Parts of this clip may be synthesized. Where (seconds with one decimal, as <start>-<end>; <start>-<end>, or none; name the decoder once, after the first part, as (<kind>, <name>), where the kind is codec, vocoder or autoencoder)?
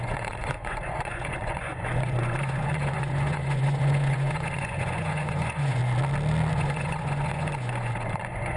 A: 0.0-5.8 (vocoder, Vocos); 6.5-8.6